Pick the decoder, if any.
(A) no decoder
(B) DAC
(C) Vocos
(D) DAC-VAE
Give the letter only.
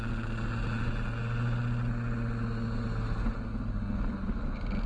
A